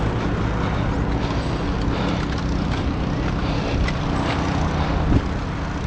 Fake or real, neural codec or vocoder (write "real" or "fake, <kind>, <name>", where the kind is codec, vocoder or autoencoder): real